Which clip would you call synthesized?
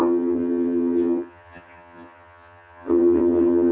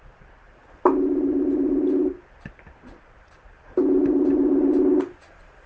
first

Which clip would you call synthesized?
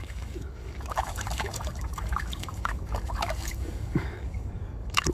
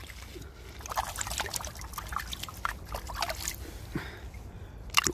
first